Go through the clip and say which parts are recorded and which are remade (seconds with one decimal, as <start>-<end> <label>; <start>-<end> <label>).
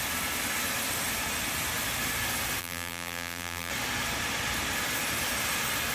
0.0-2.6 recorded; 2.6-3.7 remade; 3.7-5.9 recorded